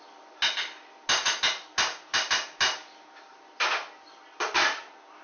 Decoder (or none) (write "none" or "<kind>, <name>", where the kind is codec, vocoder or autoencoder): none